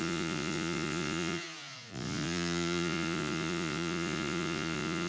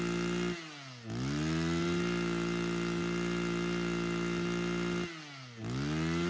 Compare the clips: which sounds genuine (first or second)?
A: second